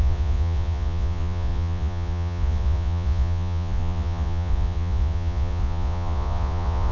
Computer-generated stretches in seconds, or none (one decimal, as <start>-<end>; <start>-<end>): 0.0-6.9